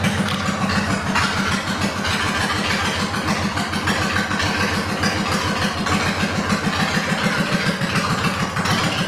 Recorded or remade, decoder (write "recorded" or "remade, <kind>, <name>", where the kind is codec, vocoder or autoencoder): recorded